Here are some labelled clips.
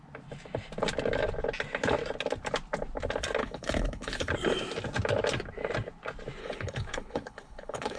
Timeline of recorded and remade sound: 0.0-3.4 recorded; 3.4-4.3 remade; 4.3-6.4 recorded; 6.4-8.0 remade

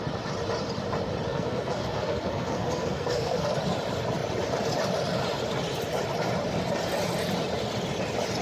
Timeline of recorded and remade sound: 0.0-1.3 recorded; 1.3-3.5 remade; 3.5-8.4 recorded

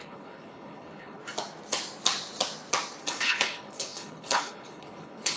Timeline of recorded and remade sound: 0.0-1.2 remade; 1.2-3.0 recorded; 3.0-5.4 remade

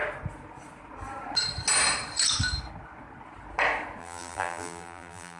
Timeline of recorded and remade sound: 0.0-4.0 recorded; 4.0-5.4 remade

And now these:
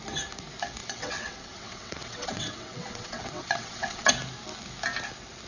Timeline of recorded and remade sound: 0.0-0.8 recorded; 0.8-4.1 remade; 4.1-5.5 recorded